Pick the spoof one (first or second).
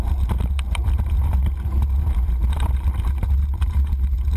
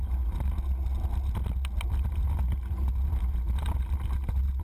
first